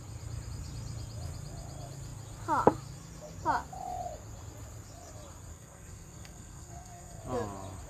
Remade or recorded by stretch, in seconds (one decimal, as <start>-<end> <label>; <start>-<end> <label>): 0.0-5.5 recorded; 5.5-7.2 remade; 7.2-7.9 recorded